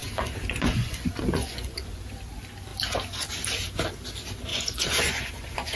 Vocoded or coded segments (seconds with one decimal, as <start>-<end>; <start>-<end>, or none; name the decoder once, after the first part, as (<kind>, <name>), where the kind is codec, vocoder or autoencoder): 0.0-2.0 (vocoder, Vocos); 4.5-5.8

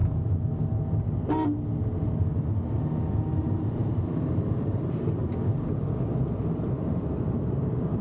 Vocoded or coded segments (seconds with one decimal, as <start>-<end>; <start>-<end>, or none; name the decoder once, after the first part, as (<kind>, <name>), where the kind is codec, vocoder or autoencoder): 3.4-5.2 (vocoder, BigVGAN v2); 6.3-8.0

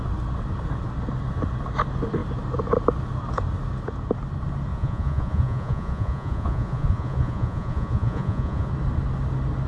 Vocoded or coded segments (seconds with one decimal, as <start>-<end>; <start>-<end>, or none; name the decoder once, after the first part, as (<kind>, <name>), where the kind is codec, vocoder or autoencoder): 4.7-8.7 (vocoder, Vocos)

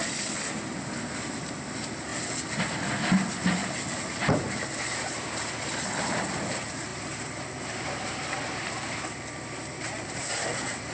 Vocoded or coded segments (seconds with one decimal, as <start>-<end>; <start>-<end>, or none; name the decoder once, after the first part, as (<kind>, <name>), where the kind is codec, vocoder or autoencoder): 0.0-2.1 (vocoder, BigVGAN v2); 2.6-3.6; 4.8-10.9

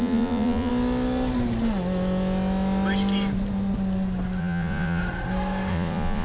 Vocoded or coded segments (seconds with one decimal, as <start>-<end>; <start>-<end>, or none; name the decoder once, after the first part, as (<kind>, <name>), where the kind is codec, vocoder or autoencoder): 0.0-0.7 (vocoder, Vocos); 4.4-5.0; 5.7-6.2